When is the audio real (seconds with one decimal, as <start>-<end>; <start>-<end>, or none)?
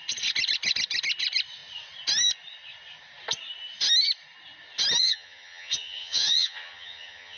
0.0-5.0